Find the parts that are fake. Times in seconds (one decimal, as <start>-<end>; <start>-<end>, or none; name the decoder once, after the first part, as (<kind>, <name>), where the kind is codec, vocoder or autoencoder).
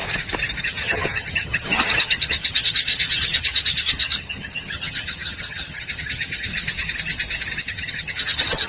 0.6-6.5 (vocoder, HiFi-GAN); 7.6-8.7